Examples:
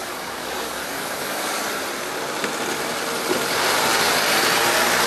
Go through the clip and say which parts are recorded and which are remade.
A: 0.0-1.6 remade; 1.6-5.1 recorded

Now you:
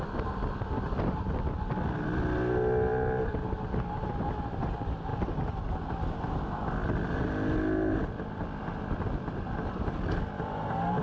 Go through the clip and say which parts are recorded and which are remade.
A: 0.0-11.0 recorded

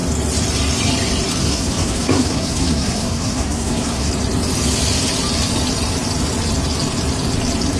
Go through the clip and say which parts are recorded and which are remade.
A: 0.0-1.4 recorded; 1.4-4.1 remade; 4.1-7.8 recorded

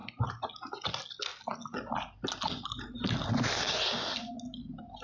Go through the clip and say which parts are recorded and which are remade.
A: 0.0-5.0 recorded

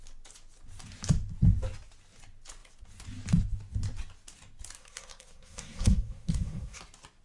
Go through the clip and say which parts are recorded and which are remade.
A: 0.0-4.8 recorded; 4.8-6.8 remade; 6.8-7.2 recorded

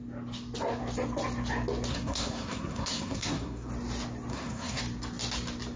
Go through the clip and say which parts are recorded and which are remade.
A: 0.0-1.9 recorded; 1.9-3.7 remade; 3.7-4.3 recorded; 4.3-4.8 remade; 4.8-5.8 recorded